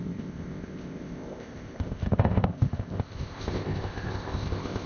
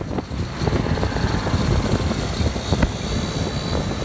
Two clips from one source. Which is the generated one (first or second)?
first